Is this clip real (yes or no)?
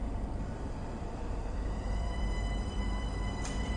no